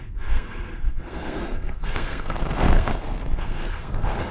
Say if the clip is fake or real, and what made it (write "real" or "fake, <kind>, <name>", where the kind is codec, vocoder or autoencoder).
fake, codec, SNAC